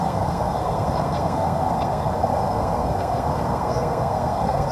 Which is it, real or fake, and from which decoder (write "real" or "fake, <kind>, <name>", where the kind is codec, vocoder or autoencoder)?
fake, codec, SNAC